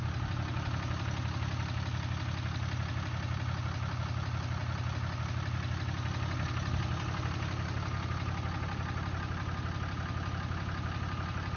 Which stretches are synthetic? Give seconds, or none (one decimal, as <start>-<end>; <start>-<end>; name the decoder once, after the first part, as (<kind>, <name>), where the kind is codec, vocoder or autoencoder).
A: none